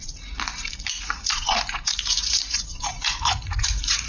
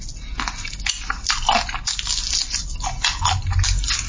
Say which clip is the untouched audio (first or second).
second